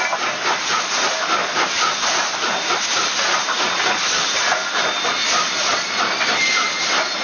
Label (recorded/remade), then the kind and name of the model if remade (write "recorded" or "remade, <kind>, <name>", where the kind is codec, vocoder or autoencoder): recorded